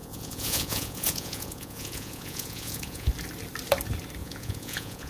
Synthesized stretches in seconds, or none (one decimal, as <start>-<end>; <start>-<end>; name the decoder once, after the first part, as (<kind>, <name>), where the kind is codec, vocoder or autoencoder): 0.0-3.1 (vocoder, Vocos); 4.2-5.1